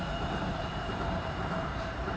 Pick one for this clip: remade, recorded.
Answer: remade